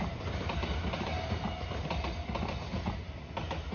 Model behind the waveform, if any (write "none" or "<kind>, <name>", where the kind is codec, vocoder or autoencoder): none